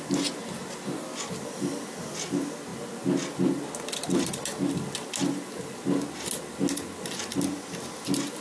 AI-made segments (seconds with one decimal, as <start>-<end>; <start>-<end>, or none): none